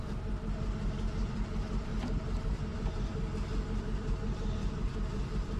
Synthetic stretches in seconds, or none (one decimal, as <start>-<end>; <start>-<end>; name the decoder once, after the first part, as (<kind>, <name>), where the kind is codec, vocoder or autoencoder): 0.0-1.9 (vocoder, BigVGAN v2); 2.7-3.1; 3.8-5.6